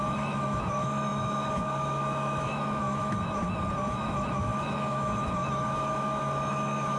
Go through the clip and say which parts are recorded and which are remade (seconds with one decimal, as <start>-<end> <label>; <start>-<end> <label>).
0.0-3.4 remade; 3.4-3.9 recorded; 3.9-7.0 remade